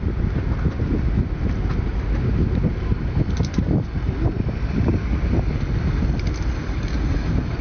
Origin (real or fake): real